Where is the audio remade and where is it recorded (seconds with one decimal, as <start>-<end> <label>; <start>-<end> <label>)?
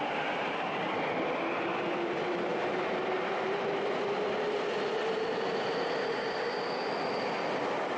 0.0-8.0 recorded